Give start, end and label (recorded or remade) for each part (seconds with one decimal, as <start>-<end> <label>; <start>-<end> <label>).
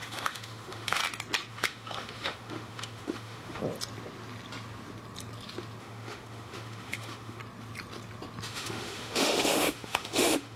0.0-1.0 remade; 1.0-1.5 recorded; 1.5-3.6 remade; 3.6-5.8 recorded; 5.8-7.4 remade; 7.4-8.5 recorded; 8.5-10.6 remade